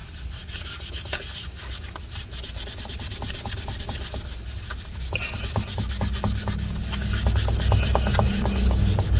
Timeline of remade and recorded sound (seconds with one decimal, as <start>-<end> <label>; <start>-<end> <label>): 0.0-9.2 recorded